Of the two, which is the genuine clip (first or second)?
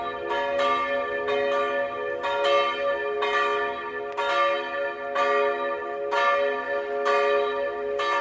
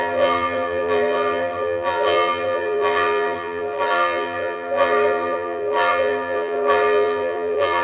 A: first